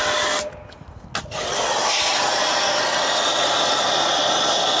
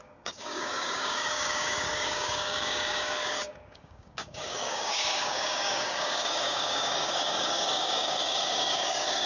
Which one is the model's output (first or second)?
second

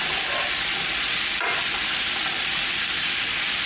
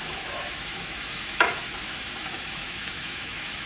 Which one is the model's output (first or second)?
second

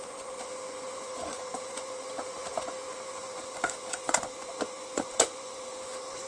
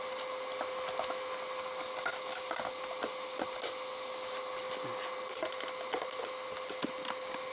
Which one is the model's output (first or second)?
first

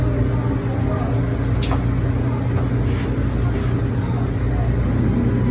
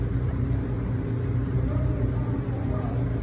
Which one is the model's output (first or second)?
second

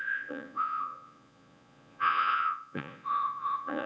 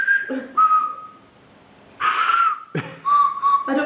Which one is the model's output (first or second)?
first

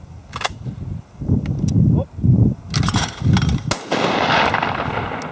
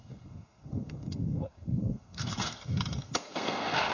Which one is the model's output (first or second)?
second